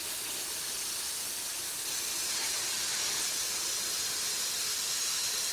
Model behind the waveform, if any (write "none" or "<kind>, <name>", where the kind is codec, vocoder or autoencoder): none